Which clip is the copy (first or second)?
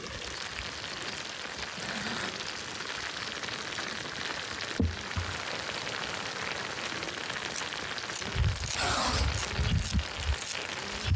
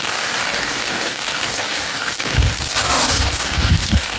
second